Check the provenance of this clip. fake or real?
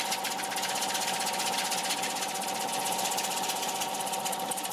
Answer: real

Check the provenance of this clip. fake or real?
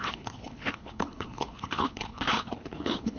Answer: fake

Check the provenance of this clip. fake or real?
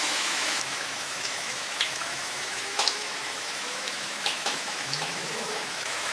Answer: fake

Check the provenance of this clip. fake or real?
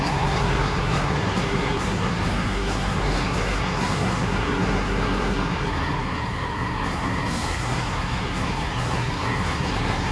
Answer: fake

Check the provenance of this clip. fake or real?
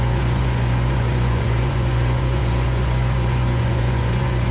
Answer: fake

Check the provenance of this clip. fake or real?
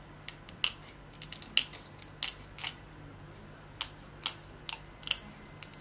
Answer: real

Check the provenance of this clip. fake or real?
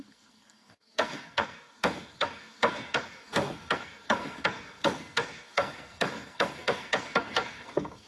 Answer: fake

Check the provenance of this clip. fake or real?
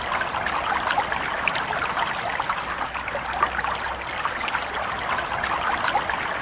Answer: real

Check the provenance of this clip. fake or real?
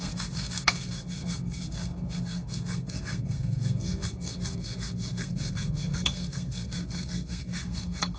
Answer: fake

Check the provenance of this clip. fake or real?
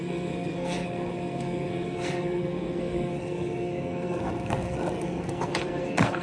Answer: fake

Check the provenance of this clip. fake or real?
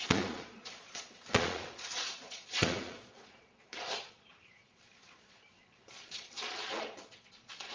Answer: fake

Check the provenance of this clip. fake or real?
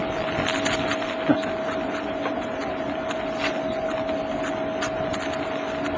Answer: real